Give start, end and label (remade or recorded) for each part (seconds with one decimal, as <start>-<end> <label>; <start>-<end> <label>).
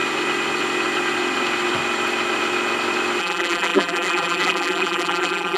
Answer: 0.0-3.2 recorded; 3.2-5.6 remade